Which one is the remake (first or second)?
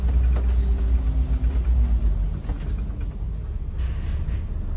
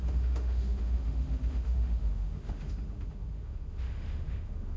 second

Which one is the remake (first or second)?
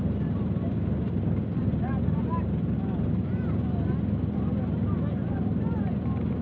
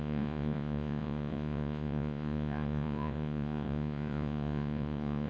second